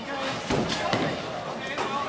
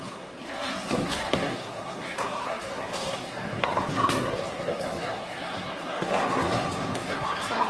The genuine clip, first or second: first